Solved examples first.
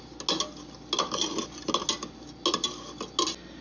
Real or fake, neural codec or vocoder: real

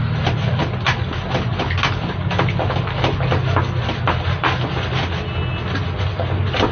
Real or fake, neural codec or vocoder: real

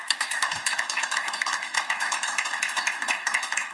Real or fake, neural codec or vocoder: fake, autoencoder, DAC-VAE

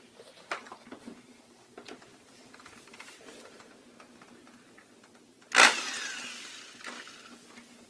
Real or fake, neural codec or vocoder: real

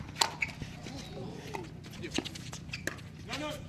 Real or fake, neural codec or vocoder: real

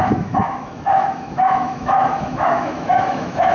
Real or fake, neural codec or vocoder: fake, autoencoder, DAC-VAE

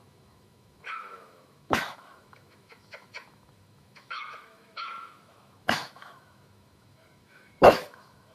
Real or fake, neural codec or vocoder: fake, autoencoder, DAC-VAE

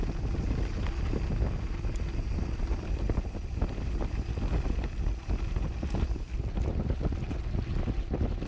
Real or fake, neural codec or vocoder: real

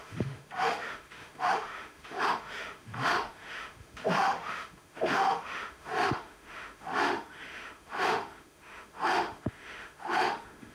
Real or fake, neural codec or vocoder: fake, autoencoder, DAC-VAE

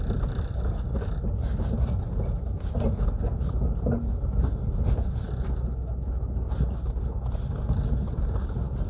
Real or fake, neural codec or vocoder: real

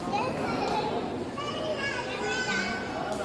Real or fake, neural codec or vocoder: real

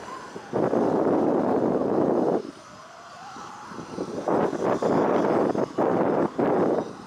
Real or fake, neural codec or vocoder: real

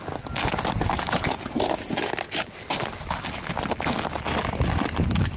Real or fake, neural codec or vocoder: real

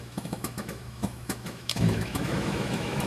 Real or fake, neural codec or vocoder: fake, autoencoder, DAC-VAE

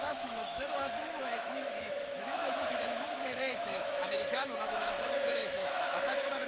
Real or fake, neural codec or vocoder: fake, autoencoder, DAC-VAE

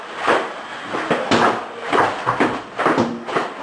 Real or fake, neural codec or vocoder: real